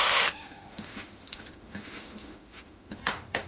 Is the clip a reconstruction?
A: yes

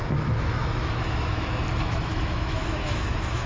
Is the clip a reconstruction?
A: yes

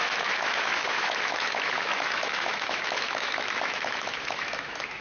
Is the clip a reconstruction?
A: yes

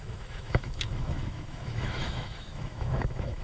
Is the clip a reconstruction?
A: yes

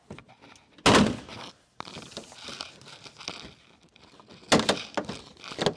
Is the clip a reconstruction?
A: no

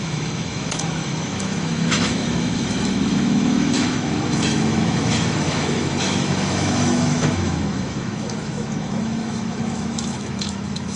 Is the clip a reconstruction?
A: yes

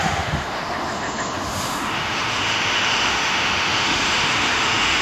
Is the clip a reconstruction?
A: yes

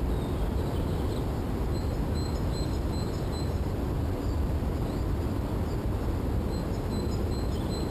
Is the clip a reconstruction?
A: no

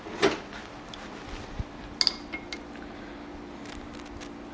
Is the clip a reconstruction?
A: no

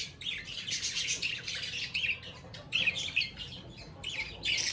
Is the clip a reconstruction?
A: no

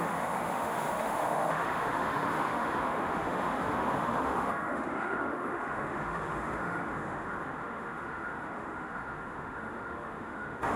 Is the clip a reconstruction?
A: yes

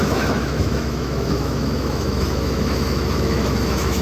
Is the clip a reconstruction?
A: yes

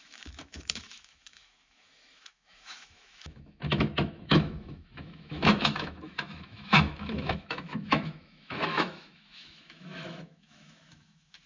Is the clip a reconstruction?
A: yes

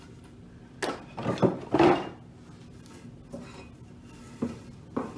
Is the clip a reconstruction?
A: no